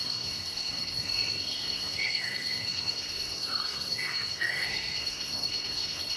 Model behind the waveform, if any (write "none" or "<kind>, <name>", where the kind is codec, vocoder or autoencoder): codec, SNAC